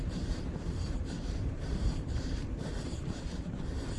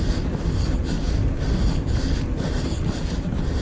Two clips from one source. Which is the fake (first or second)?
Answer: first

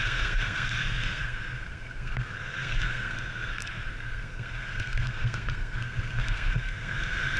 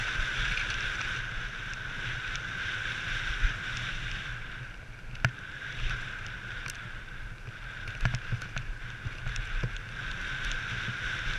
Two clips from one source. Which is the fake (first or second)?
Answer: first